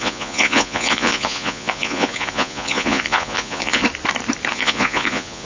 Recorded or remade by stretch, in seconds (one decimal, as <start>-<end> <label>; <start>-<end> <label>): 0.0-3.8 remade; 3.8-4.5 recorded; 4.5-5.4 remade